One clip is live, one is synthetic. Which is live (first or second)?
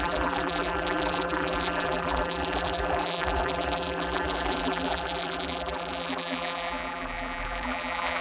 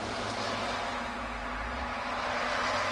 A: second